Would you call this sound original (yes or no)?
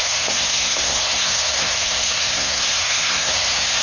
no